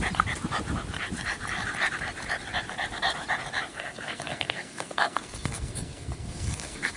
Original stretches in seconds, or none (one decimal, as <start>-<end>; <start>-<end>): 0.0-3.7